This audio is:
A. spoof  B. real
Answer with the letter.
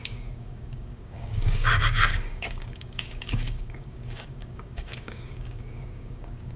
A